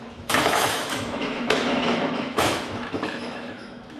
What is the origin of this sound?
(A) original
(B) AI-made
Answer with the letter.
B